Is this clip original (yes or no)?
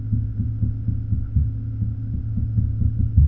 no